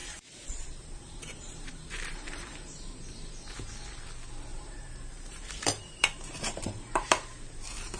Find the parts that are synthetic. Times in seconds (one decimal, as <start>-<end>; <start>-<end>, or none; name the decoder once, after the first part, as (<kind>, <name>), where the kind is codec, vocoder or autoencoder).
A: 0.0-3.3 (vocoder, BigVGAN v2); 4.5-8.0